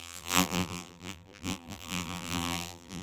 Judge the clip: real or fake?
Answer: fake